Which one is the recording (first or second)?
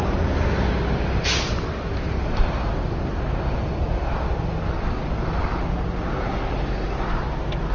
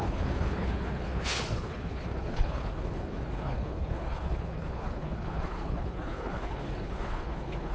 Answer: first